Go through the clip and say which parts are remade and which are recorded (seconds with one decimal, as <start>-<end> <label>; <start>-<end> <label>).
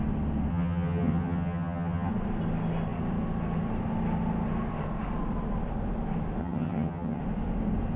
0.0-0.5 recorded; 0.5-2.1 remade; 2.1-6.4 recorded; 6.4-7.2 remade; 7.2-8.0 recorded